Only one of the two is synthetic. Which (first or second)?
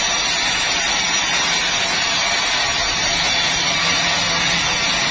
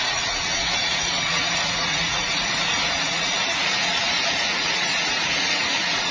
second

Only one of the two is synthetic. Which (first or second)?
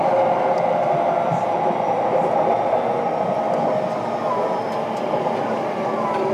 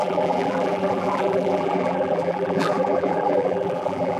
second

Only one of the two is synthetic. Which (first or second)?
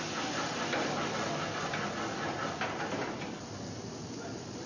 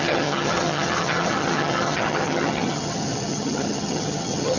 second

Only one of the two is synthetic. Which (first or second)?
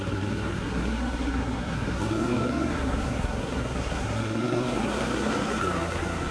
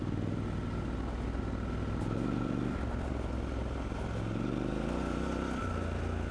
first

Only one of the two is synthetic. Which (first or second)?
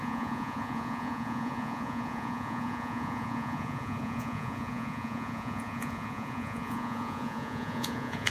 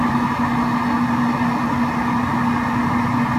first